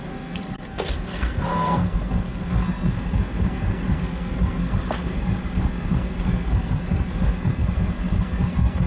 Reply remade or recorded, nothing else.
remade